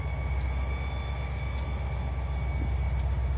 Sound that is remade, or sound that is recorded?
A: recorded